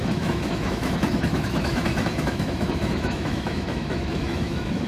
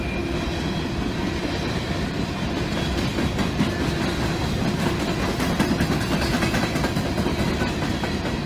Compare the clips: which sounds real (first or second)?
second